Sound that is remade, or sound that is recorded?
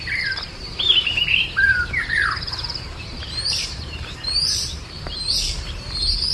remade